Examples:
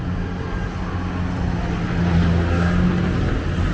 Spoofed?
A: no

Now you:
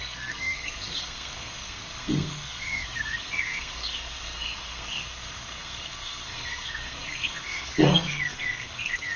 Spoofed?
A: yes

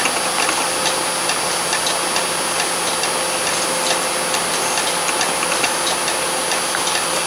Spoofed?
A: no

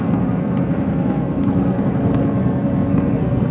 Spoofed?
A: yes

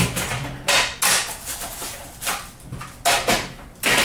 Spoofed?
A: no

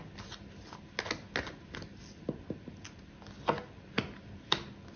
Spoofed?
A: no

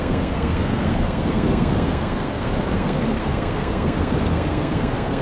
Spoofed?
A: yes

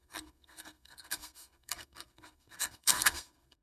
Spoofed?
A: yes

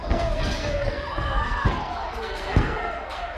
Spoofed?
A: yes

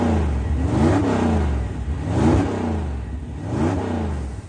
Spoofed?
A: no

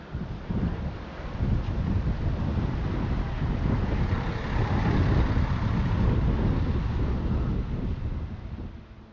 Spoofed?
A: no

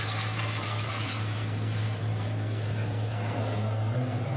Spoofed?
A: yes